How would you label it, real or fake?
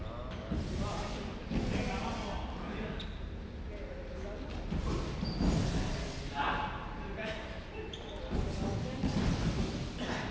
real